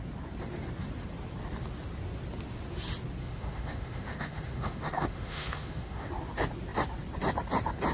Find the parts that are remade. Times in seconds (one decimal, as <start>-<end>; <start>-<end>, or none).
3.2-6.1

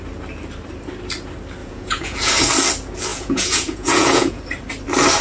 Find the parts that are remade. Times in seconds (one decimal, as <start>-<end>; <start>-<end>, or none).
1.6-2.3; 3.1-4.4

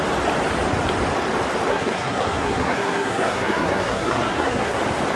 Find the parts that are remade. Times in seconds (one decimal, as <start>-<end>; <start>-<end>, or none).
1.7-4.8

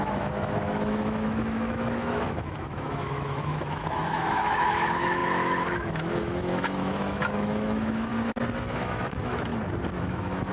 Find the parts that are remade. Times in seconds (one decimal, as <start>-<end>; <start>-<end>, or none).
0.0-8.1; 8.7-9.5; 10.0-10.5

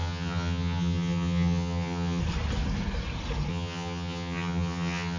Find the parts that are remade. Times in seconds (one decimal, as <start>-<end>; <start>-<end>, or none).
0.0-2.2; 3.5-5.2